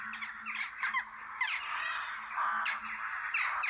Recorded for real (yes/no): yes